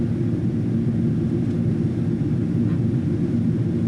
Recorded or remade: recorded